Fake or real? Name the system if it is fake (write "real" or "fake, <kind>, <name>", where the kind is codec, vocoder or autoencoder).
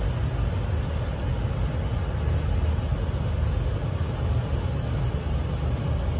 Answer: real